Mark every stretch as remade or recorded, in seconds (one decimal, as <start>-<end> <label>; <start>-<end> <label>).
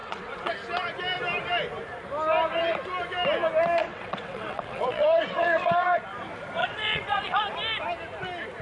0.0-0.5 remade; 0.5-3.8 recorded; 3.8-6.0 remade; 6.0-6.6 recorded; 6.6-7.4 remade; 7.4-8.6 recorded